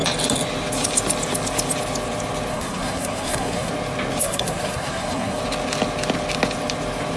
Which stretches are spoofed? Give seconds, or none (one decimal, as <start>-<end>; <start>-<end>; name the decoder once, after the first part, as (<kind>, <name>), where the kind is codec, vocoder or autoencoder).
2.5-3.7 (codec, SNAC); 4.2-5.4